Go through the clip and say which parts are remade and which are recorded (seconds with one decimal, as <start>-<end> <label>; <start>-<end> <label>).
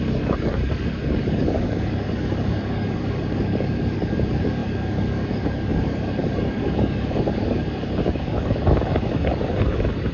0.0-10.1 remade